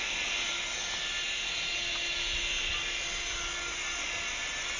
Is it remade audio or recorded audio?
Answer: recorded